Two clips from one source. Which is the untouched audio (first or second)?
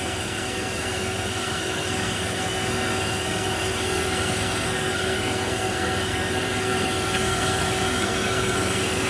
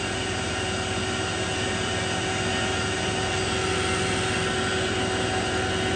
second